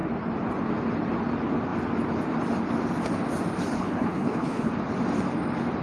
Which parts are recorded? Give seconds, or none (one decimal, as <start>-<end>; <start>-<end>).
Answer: 0.0-3.7; 4.7-5.8